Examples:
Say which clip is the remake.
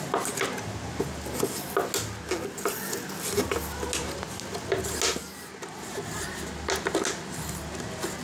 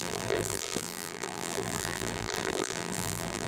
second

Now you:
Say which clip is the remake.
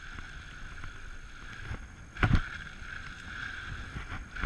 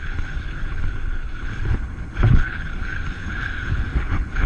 second